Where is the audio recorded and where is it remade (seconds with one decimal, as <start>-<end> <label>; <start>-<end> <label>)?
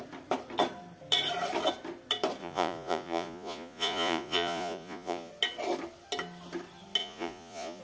0.0-2.4 recorded; 2.4-5.3 remade; 5.3-7.0 recorded; 7.0-7.8 remade